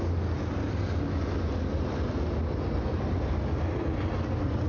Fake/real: real